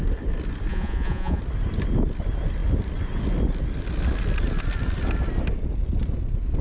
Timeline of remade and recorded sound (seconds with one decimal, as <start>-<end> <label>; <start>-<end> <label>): 0.0-0.7 recorded; 0.7-1.4 remade; 1.4-6.6 recorded